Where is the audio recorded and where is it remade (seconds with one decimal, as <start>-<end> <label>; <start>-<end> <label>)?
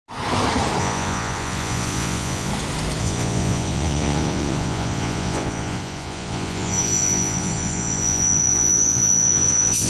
0.0-0.8 recorded; 0.8-2.5 remade; 2.5-3.0 recorded; 3.0-9.9 remade